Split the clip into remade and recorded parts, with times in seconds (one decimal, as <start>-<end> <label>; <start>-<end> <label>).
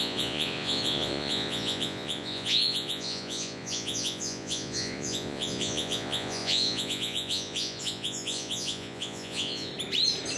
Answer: 0.0-9.7 remade; 9.7-10.4 recorded